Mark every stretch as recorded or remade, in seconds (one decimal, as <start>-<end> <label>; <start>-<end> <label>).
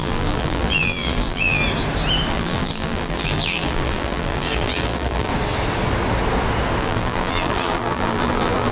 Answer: 0.0-1.6 remade; 1.6-2.3 recorded; 2.3-5.3 remade; 5.3-6.8 recorded; 6.8-8.7 remade